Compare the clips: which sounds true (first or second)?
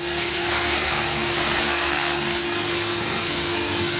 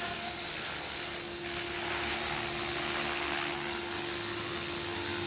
second